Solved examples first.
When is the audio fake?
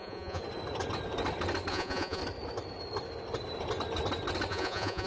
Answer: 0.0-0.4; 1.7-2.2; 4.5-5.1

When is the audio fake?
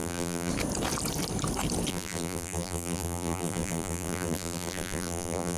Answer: 0.0-0.5; 1.9-5.6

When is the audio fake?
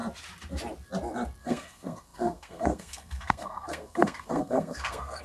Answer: 1.4-5.2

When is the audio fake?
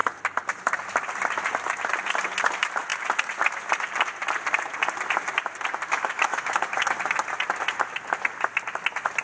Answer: 5.9-6.5